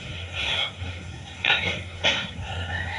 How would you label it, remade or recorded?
remade